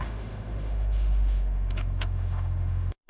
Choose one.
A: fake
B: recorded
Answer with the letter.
A